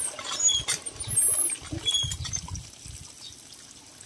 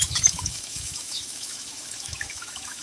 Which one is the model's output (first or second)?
second